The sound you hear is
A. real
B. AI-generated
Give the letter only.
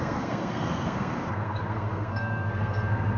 B